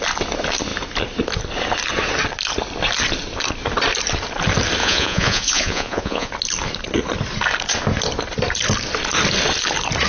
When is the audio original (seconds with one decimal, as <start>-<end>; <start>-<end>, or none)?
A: 0.0-4.8; 6.3-10.1